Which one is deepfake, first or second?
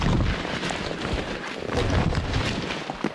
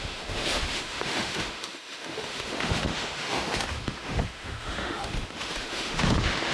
second